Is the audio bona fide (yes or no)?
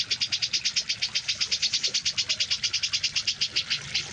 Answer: yes